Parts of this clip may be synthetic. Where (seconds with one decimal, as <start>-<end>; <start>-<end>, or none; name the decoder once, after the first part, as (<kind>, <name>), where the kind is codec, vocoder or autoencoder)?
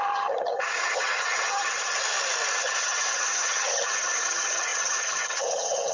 0.0-1.9 (vocoder, HiFi-GAN); 2.5-5.9